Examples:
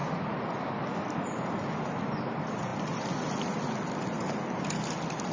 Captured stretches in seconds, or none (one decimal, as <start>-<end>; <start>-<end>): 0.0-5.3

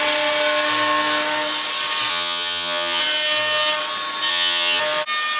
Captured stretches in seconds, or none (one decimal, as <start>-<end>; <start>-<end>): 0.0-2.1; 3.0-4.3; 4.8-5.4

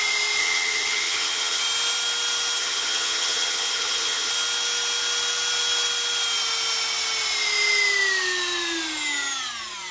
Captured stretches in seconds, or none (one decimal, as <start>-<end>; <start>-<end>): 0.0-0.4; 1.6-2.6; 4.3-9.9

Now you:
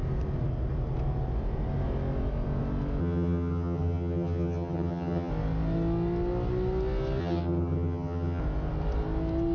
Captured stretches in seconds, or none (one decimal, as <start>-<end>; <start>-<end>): 0.0-3.0; 5.3-7.2; 8.4-9.5